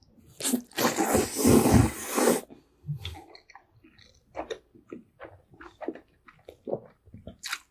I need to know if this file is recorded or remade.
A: recorded